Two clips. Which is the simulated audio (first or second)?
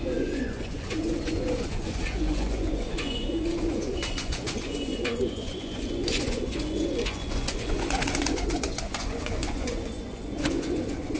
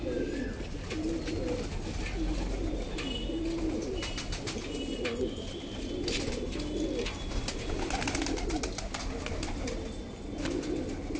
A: first